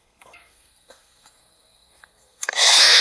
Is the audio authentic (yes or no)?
no